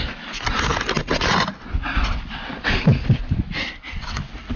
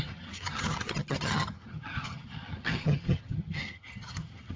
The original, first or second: first